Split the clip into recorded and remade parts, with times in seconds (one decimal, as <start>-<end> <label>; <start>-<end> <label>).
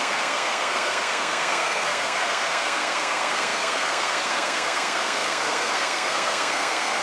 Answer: 0.0-7.0 remade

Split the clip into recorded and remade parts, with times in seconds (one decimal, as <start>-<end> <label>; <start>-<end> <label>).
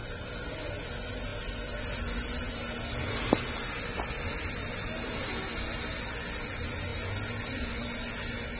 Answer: 0.0-8.6 recorded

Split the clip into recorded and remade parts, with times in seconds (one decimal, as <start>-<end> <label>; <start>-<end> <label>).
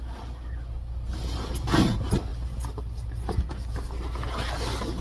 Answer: 0.0-5.0 recorded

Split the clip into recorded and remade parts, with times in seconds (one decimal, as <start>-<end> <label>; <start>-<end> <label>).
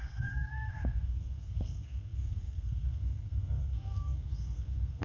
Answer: 0.0-5.0 remade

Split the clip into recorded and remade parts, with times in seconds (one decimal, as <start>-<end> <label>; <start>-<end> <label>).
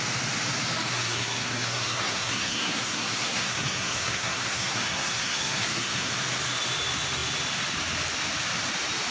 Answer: 0.0-0.9 recorded; 0.9-6.1 remade; 6.1-9.1 recorded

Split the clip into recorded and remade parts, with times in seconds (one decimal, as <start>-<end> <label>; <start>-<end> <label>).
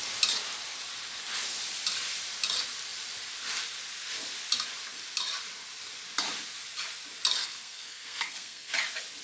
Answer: 0.0-7.4 recorded; 7.4-8.7 remade; 8.7-9.2 recorded